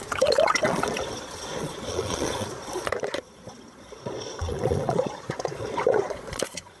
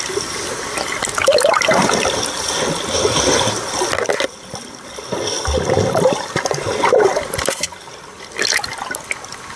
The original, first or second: second